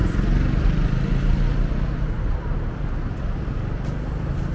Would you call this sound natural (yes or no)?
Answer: yes